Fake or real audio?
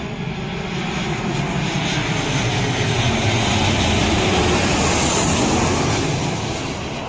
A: real